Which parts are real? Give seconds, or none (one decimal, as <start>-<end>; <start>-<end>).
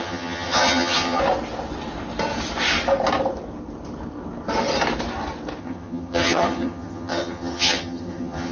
1.2-5.6